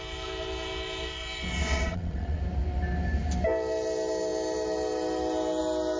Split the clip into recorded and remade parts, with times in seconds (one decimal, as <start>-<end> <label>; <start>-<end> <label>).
0.0-1.6 recorded; 1.6-2.4 remade; 2.4-6.0 recorded